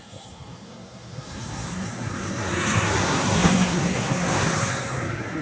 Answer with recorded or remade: remade